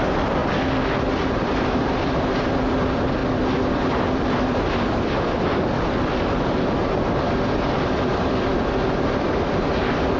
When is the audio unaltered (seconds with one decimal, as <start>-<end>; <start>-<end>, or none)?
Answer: 0.4-1.3

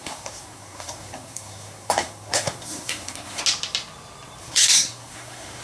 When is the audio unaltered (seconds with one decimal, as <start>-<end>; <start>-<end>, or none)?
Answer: 3.4-4.4

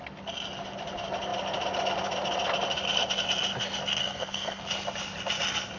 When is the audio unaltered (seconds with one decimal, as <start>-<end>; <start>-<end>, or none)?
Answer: 0.0-4.0; 4.6-5.8

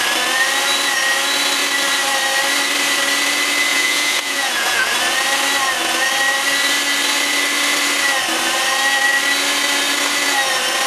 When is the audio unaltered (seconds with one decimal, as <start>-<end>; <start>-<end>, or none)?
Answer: 0.0-3.7; 4.9-10.9

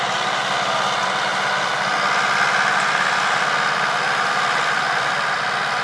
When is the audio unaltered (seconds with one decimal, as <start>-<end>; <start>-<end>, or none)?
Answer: 0.0-5.8

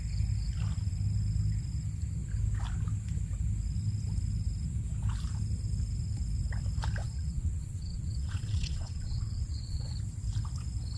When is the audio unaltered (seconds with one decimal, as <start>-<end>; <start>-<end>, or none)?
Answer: 0.0-7.0; 9.9-11.0

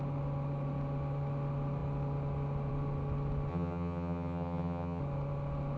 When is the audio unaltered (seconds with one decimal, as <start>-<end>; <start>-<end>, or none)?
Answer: 0.0-3.5; 5.0-5.8